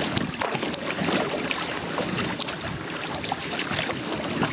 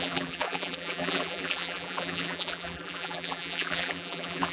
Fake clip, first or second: second